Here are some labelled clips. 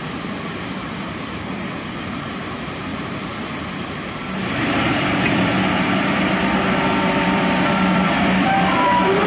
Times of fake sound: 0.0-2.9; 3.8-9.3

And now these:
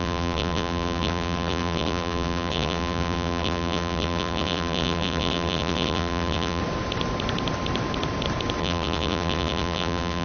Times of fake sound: 0.0-6.6; 8.6-10.2

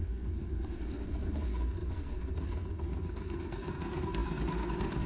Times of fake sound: 0.0-5.1

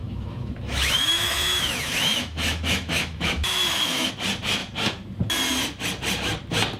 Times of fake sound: 0.0-4.1

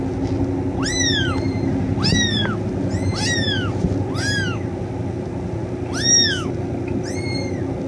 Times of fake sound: none

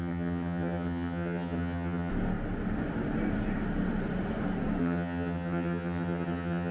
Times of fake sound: 0.0-2.1; 4.8-6.7

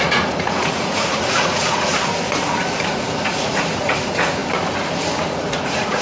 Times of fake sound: 0.0-1.9; 2.9-4.4; 5.3-6.0

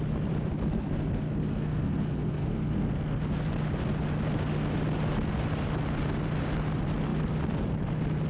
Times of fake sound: 0.7-3.2